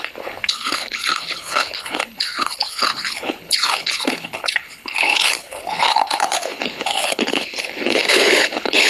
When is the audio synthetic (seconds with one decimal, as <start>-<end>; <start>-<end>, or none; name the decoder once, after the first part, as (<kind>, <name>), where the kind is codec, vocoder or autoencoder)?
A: 0.0-8.9 (codec, HILCodec)